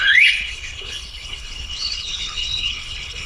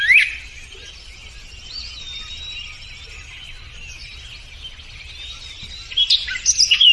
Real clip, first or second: second